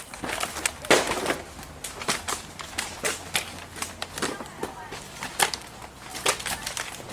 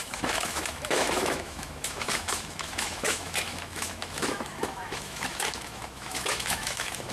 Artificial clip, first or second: second